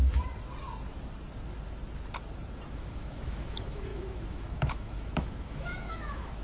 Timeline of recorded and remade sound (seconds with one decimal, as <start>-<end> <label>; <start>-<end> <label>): 0.0-2.7 recorded; 2.7-6.4 remade